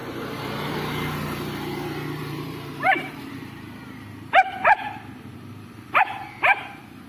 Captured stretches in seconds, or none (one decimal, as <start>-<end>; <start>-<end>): 0.7-2.2; 6.0-7.1